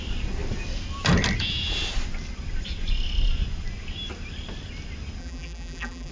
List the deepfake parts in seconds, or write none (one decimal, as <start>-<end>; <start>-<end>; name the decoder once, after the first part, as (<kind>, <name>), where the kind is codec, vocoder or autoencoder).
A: 5.2-6.1 (vocoder, BigVGAN v2)